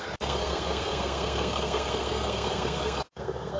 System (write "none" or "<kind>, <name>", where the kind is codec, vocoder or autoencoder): codec, SNAC